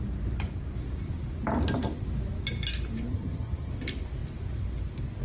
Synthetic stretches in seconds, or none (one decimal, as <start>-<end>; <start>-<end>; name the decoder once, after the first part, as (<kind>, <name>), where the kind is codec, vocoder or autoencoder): 3.1-3.7 (vocoder, HiFi-GAN)

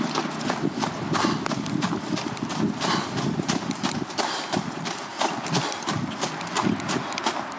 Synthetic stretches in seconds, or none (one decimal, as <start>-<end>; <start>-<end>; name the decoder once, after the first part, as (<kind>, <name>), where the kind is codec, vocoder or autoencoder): none

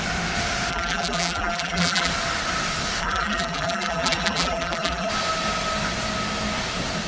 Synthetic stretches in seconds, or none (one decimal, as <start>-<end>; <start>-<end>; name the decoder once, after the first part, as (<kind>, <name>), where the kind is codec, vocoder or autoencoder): 0.7-2.1 (vocoder, BigVGAN v2); 3.0-5.1

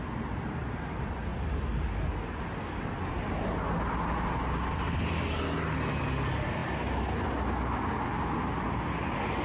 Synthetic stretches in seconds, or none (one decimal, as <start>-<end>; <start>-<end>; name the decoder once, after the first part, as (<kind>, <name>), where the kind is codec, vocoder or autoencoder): none

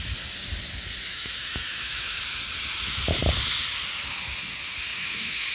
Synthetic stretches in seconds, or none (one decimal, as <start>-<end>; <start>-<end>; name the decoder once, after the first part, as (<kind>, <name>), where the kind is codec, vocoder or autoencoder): 1.1-2.2 (autoencoder, DAC-VAE); 4.9-5.5